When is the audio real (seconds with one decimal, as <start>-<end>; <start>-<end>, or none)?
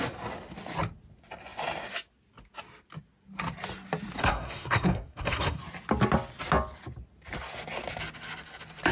0.0-4.2; 5.6-8.9